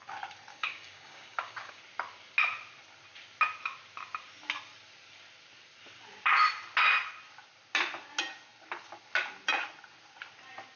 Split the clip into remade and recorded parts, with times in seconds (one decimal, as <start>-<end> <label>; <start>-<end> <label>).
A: 0.0-0.5 recorded; 0.5-1.8 remade; 1.8-10.8 recorded